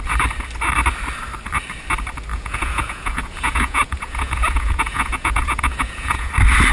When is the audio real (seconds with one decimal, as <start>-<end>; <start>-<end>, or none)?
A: 0.0-2.3; 6.3-6.7